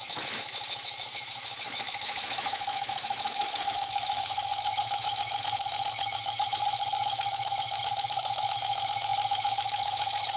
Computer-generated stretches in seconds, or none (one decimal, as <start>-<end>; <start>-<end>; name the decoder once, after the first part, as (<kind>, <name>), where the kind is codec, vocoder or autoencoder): 0.0-10.4 (autoencoder, DAC-VAE)